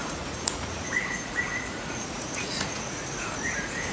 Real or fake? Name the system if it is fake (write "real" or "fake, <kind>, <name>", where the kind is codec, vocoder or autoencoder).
fake, vocoder, Vocos